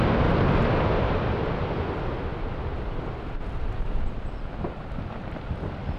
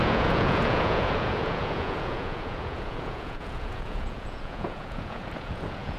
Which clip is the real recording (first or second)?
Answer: first